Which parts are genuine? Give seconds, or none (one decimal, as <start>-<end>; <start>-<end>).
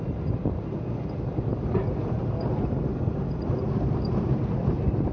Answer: 0.0-5.1